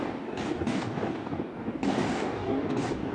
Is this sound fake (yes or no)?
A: yes